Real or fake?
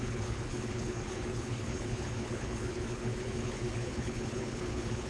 fake